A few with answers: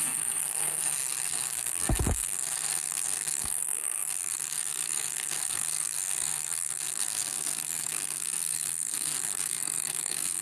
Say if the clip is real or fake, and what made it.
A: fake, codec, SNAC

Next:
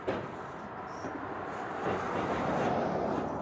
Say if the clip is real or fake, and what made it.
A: real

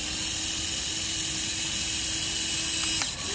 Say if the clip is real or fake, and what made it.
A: real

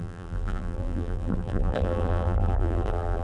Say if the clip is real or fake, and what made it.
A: fake, vocoder, BigVGAN v2